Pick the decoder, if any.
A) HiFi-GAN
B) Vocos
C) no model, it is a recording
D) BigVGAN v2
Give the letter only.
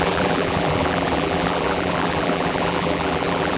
D